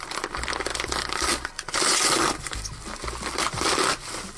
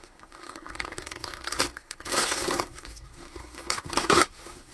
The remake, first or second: second